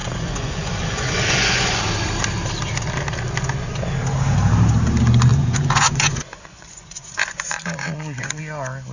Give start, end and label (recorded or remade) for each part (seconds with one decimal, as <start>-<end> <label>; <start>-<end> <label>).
0.0-1.8 remade; 1.8-5.3 recorded; 5.3-8.4 remade; 8.4-8.9 recorded